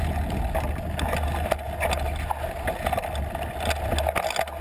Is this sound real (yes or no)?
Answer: yes